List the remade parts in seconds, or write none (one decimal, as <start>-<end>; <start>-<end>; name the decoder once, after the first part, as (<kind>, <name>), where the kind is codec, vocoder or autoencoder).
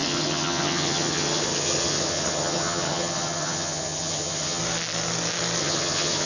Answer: 0.0-4.6 (vocoder, HiFi-GAN); 5.6-6.3